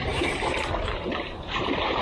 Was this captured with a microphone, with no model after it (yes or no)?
no